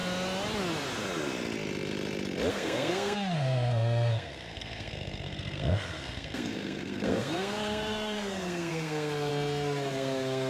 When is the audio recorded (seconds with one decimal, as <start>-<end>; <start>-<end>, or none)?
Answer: 0.0-2.5; 9.3-9.9